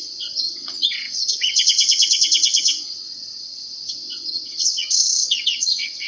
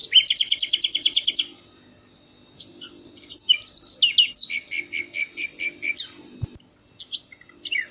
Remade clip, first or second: first